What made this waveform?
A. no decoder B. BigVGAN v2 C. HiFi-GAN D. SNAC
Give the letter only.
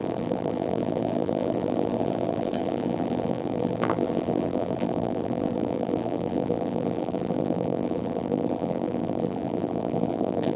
B